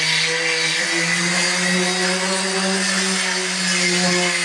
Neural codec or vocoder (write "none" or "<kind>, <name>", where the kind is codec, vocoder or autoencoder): none